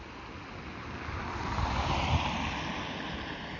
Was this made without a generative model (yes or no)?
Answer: yes